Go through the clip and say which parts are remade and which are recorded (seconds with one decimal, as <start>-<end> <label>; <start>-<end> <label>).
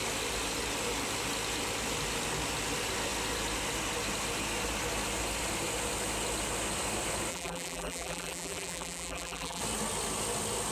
0.0-7.3 recorded; 7.3-9.6 remade; 9.6-10.7 recorded